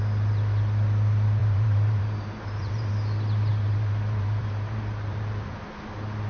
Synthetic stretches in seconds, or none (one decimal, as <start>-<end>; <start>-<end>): 1.4-2.9; 3.5-5.5